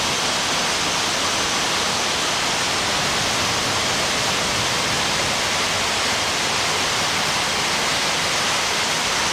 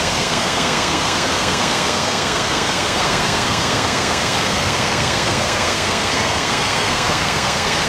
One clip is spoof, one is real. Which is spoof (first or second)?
second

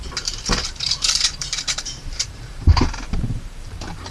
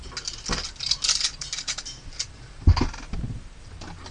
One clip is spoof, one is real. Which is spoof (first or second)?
first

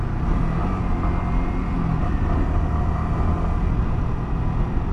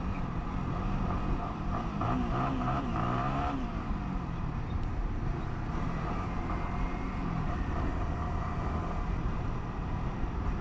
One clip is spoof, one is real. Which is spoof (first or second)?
second